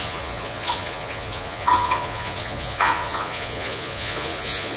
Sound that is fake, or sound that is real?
fake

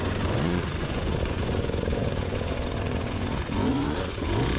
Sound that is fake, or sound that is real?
fake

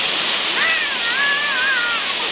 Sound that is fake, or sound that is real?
real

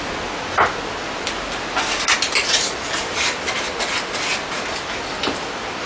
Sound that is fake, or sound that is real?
real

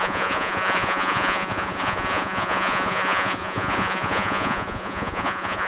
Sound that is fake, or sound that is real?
fake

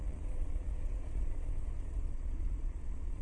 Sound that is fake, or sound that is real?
fake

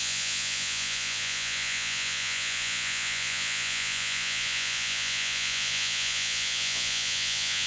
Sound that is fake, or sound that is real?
fake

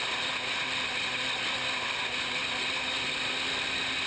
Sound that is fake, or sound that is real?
real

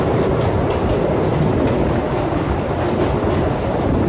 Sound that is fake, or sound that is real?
real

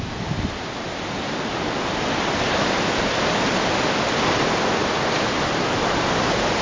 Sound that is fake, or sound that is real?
real